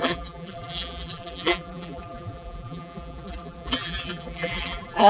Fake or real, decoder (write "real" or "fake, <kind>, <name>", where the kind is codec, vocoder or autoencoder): fake, vocoder, BigVGAN v2